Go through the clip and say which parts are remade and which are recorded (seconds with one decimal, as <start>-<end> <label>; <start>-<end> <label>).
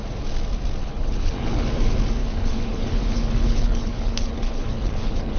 0.0-0.8 recorded; 0.8-1.7 remade; 1.7-2.2 recorded; 2.2-5.4 remade